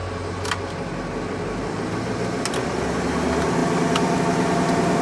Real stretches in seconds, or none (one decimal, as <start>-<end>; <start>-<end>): 0.0-5.0